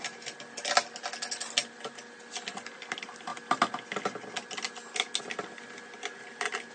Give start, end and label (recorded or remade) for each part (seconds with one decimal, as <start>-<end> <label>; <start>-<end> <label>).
0.0-6.7 recorded